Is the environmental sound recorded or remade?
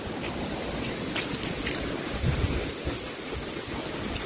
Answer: recorded